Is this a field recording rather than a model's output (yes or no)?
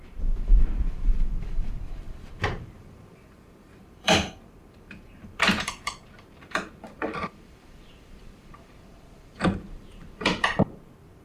no